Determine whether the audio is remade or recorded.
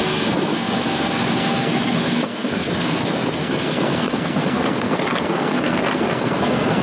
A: remade